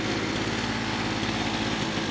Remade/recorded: recorded